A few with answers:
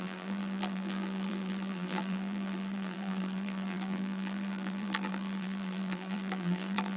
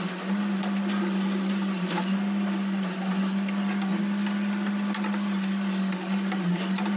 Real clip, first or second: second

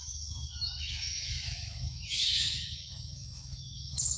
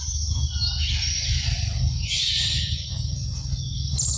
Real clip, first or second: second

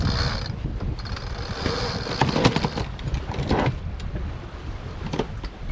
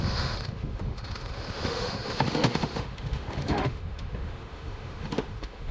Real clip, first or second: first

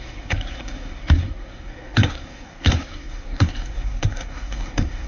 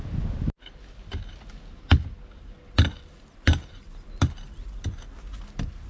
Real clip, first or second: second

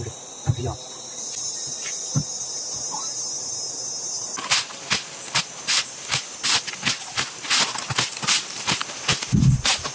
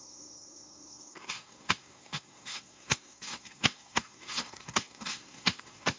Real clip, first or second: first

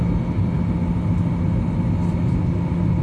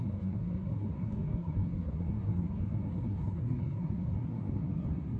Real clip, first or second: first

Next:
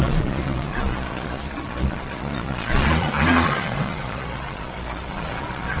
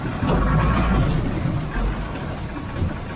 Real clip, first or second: second